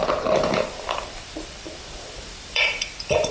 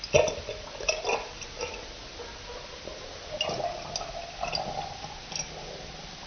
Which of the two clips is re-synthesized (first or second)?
first